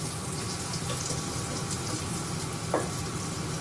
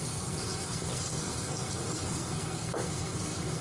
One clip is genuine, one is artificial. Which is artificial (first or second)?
second